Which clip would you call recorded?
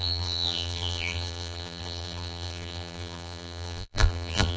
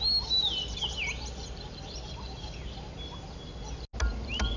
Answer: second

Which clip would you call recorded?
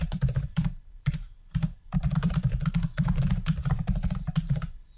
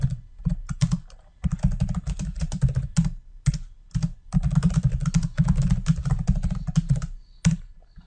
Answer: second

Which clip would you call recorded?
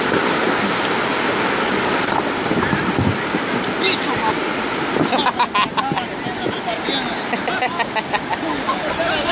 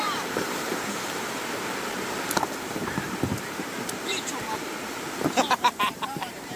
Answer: first